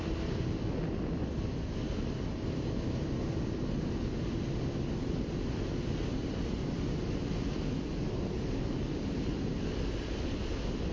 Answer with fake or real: real